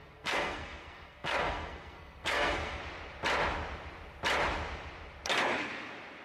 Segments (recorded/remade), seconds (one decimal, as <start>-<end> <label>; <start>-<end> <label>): 0.0-2.8 remade; 2.8-6.2 recorded